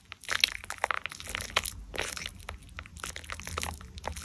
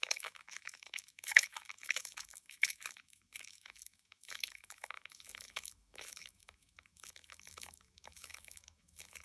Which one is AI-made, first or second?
second